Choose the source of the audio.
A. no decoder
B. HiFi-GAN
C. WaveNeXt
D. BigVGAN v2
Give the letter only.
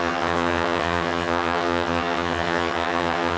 B